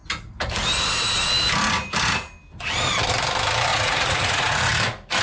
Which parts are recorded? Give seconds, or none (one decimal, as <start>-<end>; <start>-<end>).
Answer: 0.0-3.7; 4.7-5.2